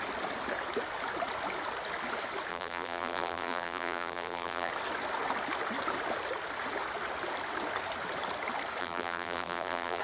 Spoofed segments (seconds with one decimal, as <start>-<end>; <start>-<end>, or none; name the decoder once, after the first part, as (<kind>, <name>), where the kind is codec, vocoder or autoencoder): 2.5-4.7 (vocoder, BigVGAN v2); 8.8-10.0

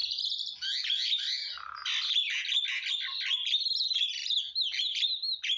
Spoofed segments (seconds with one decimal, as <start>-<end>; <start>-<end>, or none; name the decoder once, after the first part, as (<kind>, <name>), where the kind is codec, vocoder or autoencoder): none